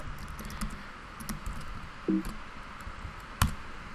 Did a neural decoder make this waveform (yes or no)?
no